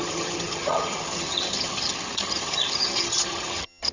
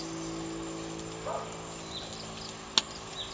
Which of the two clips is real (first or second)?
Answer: second